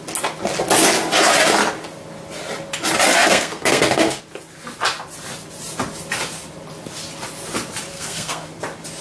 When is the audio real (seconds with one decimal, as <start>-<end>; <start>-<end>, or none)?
0.0-3.2; 4.2-7.9; 8.5-9.0